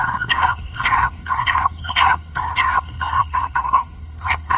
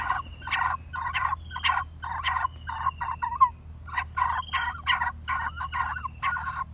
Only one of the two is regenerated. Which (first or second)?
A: first